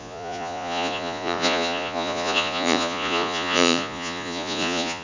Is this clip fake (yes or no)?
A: yes